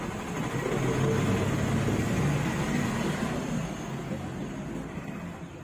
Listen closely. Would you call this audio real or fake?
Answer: real